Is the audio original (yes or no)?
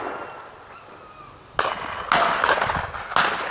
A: yes